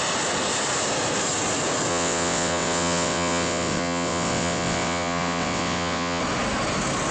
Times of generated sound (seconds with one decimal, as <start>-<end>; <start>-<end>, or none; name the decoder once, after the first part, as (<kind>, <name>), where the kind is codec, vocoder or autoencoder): 1.9-6.2 (vocoder, WaveNeXt)